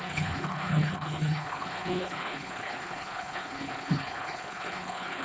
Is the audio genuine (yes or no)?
no